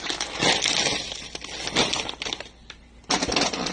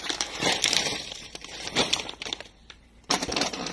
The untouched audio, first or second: first